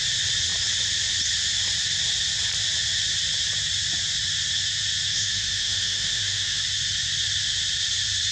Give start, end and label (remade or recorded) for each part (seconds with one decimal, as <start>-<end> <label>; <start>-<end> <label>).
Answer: 0.0-5.1 recorded; 5.1-6.6 remade; 6.6-8.3 recorded